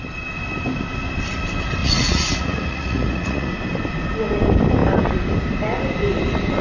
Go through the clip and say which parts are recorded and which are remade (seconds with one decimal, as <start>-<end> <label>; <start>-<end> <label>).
0.0-1.8 recorded; 1.8-3.5 remade; 3.5-6.6 recorded